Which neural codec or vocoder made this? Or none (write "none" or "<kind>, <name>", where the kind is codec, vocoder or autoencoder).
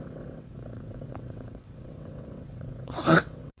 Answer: vocoder, WaveNeXt